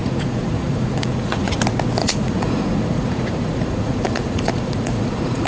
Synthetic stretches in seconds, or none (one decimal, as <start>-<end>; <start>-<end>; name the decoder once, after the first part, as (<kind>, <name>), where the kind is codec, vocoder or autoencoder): 0.0-1.6 (vocoder, Vocos); 2.0-5.5

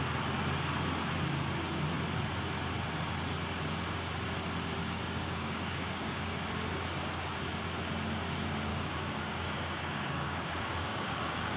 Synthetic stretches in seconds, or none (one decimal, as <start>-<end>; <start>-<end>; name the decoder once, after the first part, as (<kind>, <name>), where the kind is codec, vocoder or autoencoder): 4.8-6.4 (codec, DAC); 8.7-11.6

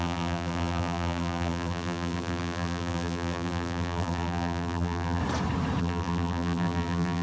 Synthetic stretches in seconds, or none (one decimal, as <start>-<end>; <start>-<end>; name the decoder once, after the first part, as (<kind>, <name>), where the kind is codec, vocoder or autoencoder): 0.0-5.2 (vocoder, BigVGAN v2); 5.8-7.2

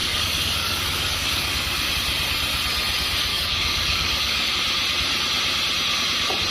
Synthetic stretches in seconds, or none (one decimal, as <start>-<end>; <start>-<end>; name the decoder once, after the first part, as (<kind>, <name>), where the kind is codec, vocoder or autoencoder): 0.0-1.9 (codec, DAC); 3.3-4.5